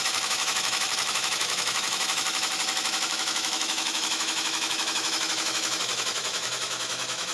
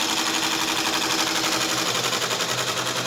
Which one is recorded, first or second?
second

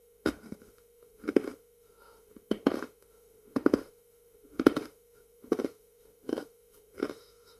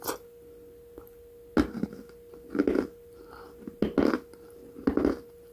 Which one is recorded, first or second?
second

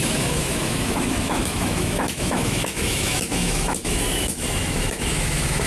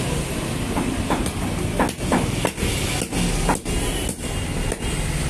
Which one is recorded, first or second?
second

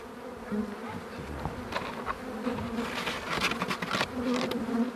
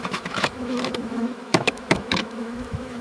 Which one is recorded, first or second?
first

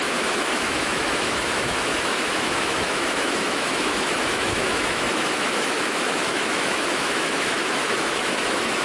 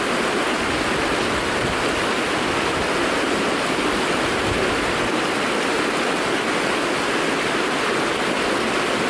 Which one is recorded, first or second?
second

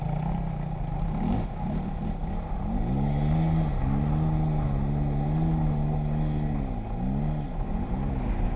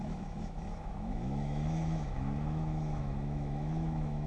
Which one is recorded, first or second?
first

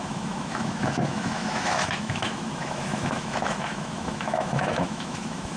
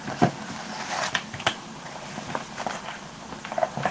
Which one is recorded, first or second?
second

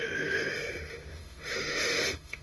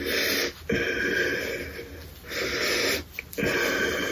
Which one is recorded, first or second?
second